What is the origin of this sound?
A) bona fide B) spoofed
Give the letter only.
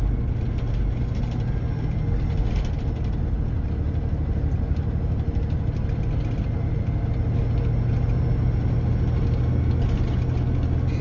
A